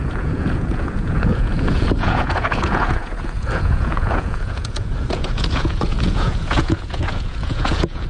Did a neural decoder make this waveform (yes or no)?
yes